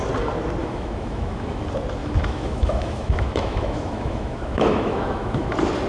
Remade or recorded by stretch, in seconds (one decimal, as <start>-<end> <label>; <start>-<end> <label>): 0.0-0.6 recorded; 0.6-1.6 remade; 1.6-2.0 recorded; 2.0-5.5 remade; 5.5-5.9 recorded